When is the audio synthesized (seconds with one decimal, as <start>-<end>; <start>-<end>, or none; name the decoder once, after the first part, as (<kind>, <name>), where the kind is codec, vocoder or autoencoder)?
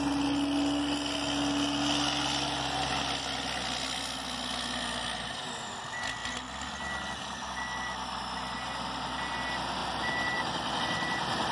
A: none